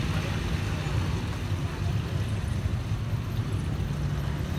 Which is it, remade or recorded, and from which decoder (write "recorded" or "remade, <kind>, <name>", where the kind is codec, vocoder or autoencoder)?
recorded